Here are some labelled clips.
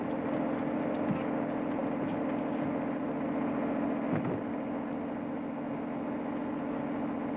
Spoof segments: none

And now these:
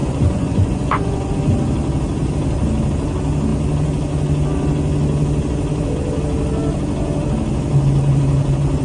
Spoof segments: 0.0-1.3 (vocoder, Vocos)

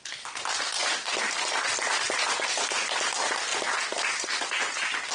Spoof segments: 0.8-2.3 (vocoder, BigVGAN v2); 3.5-4.4

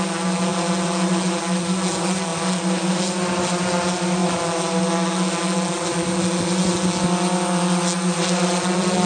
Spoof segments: none